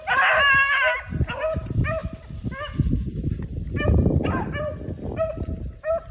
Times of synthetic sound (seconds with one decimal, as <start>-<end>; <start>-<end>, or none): none